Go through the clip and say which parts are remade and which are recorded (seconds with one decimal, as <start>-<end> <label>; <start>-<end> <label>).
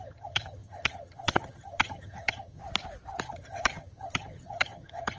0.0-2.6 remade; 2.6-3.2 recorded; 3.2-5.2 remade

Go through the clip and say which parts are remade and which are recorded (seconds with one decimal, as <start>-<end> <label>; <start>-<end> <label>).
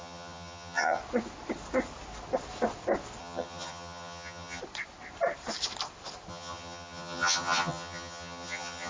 0.0-1.0 remade; 1.0-3.2 recorded; 3.2-4.6 remade; 4.6-6.3 recorded; 6.3-8.9 remade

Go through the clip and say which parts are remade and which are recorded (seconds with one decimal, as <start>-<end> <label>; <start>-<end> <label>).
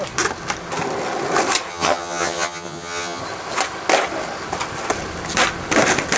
0.0-1.7 recorded; 1.7-3.2 remade; 3.2-6.2 recorded